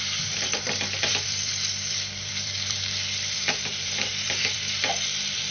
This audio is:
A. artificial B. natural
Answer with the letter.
A